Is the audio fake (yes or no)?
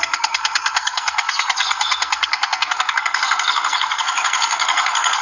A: yes